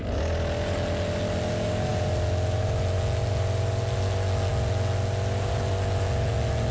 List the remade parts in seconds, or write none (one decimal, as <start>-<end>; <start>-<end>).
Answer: none